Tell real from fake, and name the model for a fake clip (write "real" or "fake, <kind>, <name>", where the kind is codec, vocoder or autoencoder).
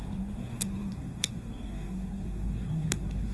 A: fake, codec, SNAC